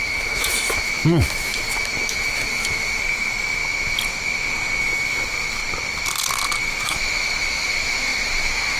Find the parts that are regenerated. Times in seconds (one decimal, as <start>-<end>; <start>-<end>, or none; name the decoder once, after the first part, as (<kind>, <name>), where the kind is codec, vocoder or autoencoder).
0.0-3.6 (autoencoder, DAC-VAE); 4.8-5.6; 6.6-8.8